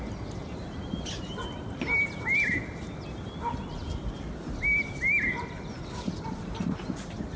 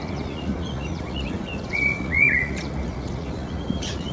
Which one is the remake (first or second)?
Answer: second